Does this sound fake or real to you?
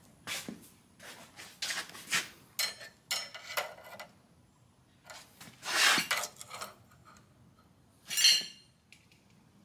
real